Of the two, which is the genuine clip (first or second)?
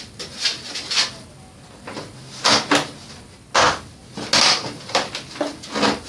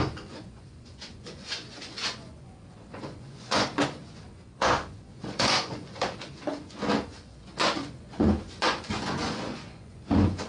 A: first